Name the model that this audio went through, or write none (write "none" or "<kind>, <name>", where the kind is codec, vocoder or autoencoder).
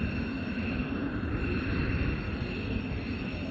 none